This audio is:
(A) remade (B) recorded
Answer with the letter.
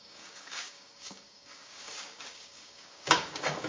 A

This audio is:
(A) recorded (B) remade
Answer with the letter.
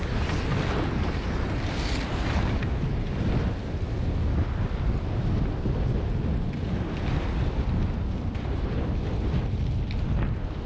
A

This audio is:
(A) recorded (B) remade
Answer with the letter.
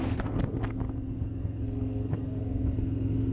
B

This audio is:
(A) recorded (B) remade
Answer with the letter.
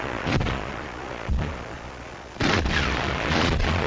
B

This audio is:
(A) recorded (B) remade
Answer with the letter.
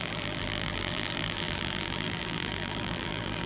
B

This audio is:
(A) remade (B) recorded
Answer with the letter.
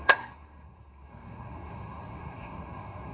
A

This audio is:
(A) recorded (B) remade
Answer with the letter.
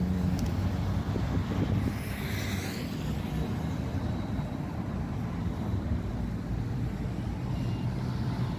A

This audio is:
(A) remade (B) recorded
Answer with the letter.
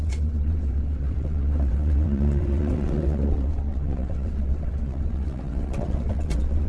A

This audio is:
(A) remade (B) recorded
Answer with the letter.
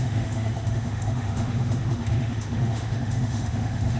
A